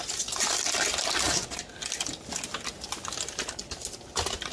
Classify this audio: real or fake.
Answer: real